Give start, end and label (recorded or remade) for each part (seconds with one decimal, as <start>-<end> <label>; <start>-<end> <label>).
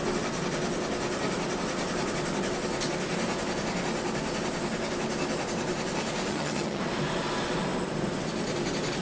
0.0-6.3 recorded; 6.3-6.8 remade; 6.8-9.0 recorded